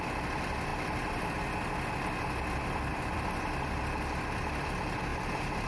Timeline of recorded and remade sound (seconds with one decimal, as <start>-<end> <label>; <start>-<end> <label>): 0.0-0.7 recorded; 0.7-1.3 remade; 1.3-2.9 recorded; 2.9-3.8 remade; 3.8-5.7 recorded